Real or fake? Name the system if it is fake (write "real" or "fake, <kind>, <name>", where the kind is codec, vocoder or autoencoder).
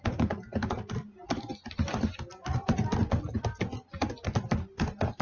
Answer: real